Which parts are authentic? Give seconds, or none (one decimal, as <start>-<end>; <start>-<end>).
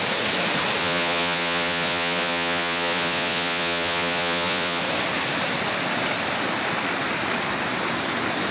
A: 0.0-0.8; 4.8-8.5